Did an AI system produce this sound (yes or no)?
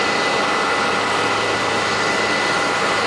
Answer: no